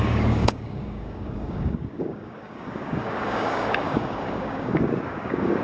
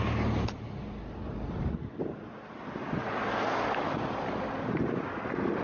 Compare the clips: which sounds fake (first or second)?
first